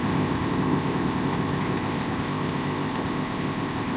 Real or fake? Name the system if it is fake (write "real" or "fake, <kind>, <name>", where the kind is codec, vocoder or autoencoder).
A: fake, codec, ZipCodec